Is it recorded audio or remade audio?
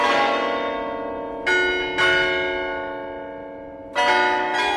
recorded